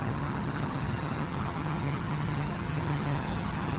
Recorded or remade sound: remade